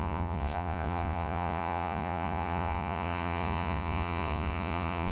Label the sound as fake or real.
fake